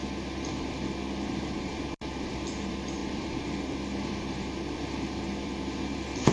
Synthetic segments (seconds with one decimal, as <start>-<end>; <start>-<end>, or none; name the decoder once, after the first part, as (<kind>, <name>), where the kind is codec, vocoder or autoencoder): 0.5-6.3 (vocoder, BigVGAN v2)